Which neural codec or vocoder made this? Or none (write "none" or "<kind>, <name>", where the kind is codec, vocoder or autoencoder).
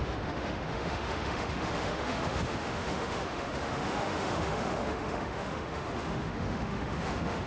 autoencoder, DAC-VAE